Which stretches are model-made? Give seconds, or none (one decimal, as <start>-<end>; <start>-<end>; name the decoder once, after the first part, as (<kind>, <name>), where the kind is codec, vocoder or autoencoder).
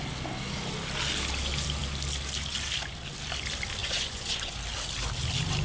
3.8-4.5 (vocoder, Vocos)